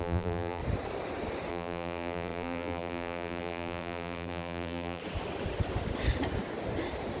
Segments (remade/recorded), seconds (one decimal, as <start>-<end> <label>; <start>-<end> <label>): 0.0-0.6 remade; 0.6-1.5 recorded; 1.5-5.0 remade; 5.0-7.2 recorded